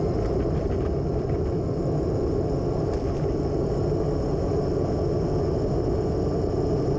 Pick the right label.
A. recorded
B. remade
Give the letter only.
A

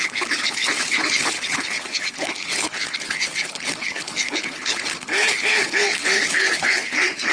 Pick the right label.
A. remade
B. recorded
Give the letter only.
A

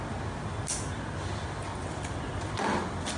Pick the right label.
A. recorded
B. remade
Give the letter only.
A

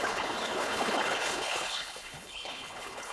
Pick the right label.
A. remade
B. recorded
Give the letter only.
A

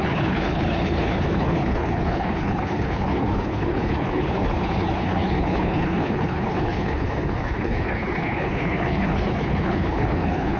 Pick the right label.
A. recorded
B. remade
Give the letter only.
B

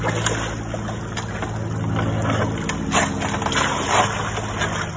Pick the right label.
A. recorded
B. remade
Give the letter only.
A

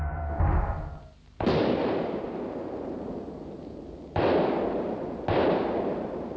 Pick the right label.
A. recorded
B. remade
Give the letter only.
A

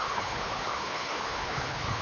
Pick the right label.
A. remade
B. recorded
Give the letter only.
A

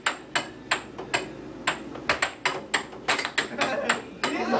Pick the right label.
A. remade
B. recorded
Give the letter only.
B